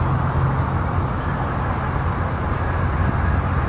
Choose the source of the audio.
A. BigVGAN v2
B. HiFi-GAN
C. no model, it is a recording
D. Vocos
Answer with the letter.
C